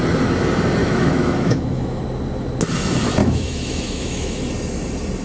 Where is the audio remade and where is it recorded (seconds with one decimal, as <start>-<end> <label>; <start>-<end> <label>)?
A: 0.0-0.8 recorded; 0.8-2.0 remade; 2.0-3.2 recorded; 3.2-4.4 remade; 4.4-5.2 recorded